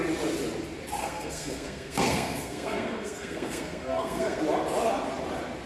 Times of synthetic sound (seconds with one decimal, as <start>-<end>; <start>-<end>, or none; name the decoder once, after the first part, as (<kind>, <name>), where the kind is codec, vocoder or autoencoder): 1.0-4.4 (codec, SNAC)